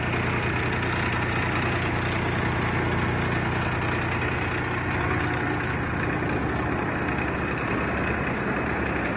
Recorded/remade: recorded